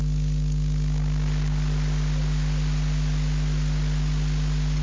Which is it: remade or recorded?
recorded